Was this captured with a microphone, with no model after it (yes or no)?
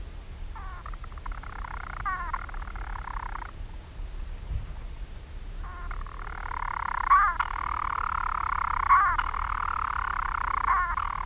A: yes